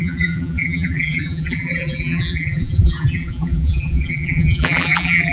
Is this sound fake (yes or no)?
yes